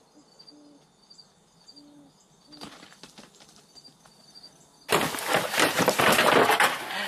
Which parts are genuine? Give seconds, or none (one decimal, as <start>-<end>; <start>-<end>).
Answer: 0.0-7.1

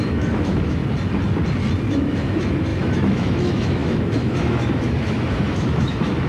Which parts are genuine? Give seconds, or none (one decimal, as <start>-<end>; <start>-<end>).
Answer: 0.8-1.9

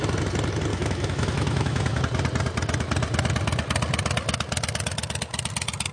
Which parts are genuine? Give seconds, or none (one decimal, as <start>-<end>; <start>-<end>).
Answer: 0.0-0.7; 2.0-5.9

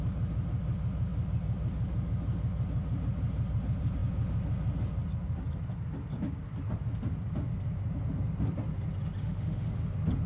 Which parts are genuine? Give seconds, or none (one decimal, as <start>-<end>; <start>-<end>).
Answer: 0.0-9.2; 9.7-10.3

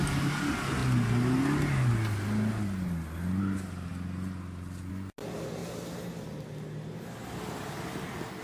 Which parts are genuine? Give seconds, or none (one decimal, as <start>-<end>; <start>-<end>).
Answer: 0.0-8.4

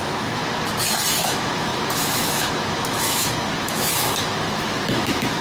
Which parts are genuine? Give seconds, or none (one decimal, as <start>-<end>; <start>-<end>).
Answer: 0.4-1.2